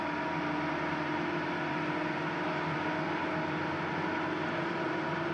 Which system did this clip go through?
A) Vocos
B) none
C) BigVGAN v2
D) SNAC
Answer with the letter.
B